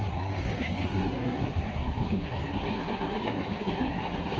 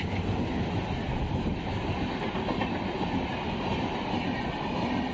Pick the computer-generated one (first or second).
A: first